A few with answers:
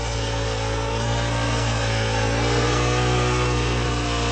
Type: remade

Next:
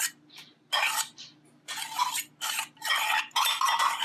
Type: recorded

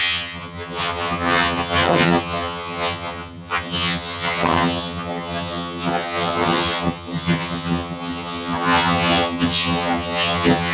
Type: remade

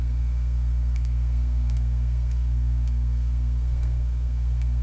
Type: remade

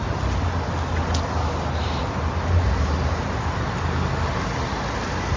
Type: recorded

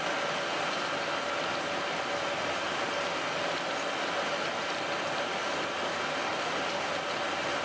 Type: recorded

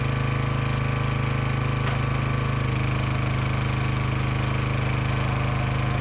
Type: recorded